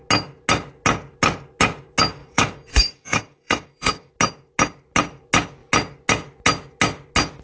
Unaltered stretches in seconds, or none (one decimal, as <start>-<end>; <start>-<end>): 0.0-2.2; 4.1-7.4